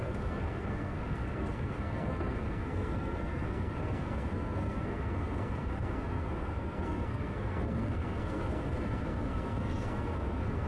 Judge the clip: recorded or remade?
remade